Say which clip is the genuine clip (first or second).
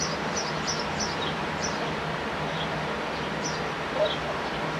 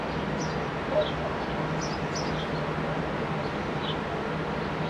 second